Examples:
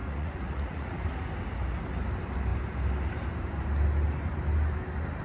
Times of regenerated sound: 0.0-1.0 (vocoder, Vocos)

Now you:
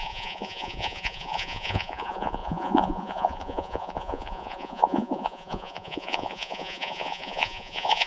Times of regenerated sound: 0.0-8.1 (vocoder, Vocos)